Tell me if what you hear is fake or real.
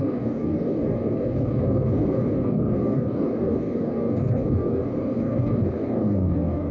fake